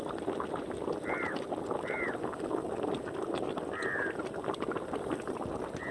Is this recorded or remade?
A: recorded